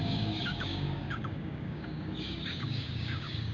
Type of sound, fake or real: fake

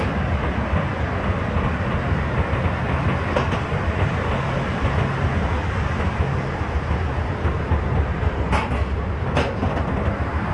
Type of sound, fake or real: real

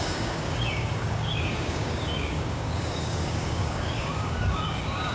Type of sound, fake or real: fake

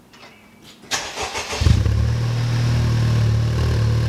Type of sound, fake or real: real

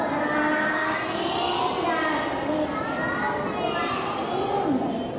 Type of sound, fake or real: real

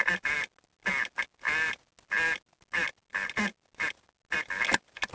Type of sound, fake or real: real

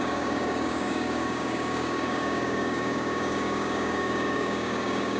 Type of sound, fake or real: fake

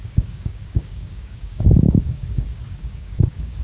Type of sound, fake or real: fake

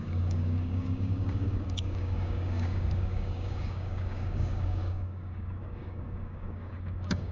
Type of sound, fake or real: fake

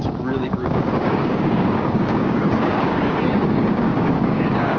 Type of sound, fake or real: fake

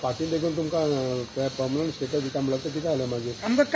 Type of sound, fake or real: real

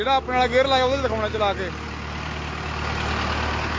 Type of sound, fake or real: real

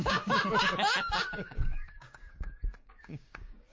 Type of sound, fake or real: fake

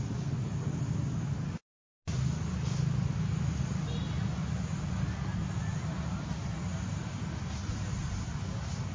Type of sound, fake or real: real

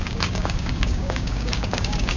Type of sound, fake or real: fake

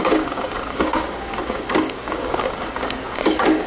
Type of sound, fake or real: fake